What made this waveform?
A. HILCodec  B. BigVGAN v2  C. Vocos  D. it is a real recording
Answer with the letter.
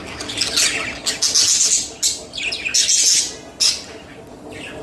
D